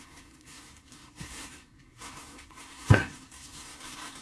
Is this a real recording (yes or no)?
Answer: no